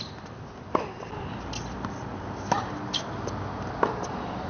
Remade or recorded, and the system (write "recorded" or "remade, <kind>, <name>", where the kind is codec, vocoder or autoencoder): recorded